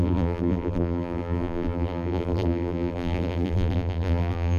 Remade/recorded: remade